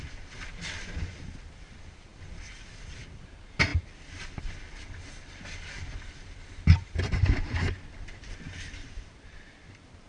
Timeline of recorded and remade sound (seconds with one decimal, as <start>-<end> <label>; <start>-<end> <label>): 0.0-10.1 recorded